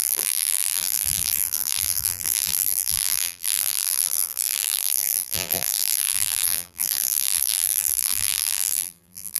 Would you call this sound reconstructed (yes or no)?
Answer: yes